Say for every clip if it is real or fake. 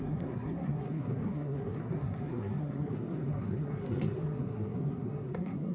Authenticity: fake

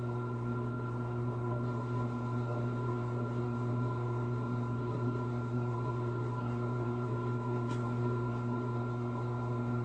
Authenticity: fake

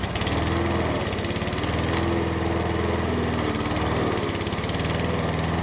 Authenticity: real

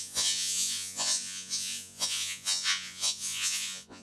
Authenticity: fake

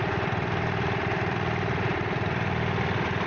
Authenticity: real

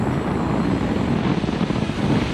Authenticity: real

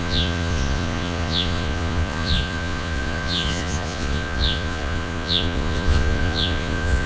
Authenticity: fake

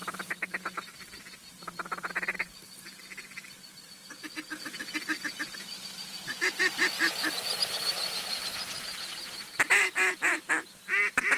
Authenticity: real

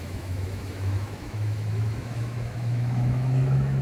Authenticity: fake